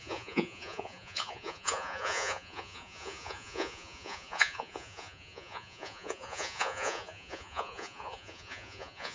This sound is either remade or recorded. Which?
remade